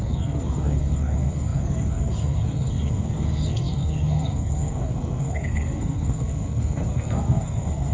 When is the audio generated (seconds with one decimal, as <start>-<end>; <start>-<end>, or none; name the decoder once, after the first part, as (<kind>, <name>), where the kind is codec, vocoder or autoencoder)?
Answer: 0.0-7.9 (codec, SNAC)